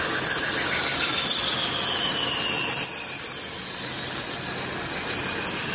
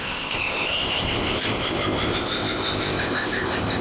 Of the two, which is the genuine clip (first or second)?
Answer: first